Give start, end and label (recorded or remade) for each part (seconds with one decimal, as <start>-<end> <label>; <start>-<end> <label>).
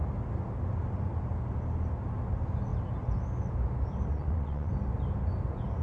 0.0-4.1 recorded; 4.1-4.7 remade; 4.7-5.8 recorded